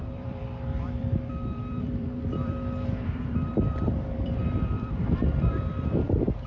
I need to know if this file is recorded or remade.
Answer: remade